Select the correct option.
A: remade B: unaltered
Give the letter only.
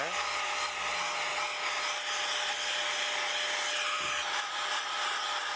B